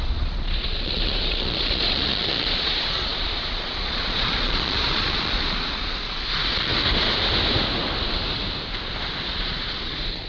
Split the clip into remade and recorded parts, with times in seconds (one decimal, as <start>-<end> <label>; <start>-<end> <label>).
0.0-6.7 remade; 6.7-9.3 recorded; 9.3-10.3 remade

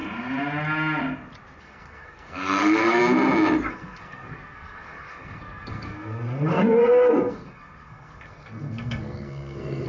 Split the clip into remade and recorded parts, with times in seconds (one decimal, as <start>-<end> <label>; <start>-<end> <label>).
0.0-1.6 recorded; 1.6-3.0 remade; 3.0-3.7 recorded; 3.7-9.9 remade

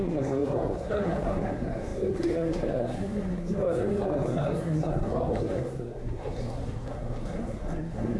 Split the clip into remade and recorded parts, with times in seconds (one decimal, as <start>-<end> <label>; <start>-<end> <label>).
0.0-8.2 remade

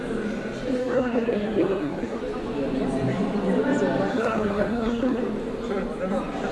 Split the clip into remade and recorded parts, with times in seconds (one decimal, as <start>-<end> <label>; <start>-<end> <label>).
0.0-0.8 recorded; 0.8-2.2 remade; 2.2-4.1 recorded; 4.1-5.2 remade; 5.2-6.5 recorded

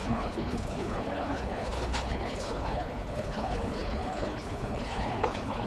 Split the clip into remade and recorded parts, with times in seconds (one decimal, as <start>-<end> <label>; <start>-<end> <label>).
0.0-5.7 remade

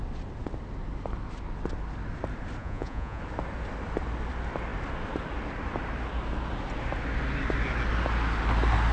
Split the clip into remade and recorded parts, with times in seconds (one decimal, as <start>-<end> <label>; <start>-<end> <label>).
0.0-2.6 recorded; 2.6-3.2 remade; 3.2-8.9 recorded